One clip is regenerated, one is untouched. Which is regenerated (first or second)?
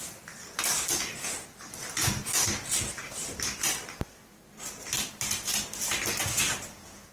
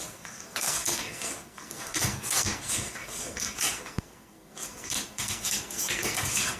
second